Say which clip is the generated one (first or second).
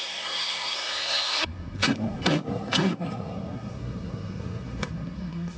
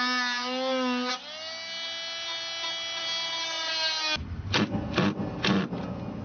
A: first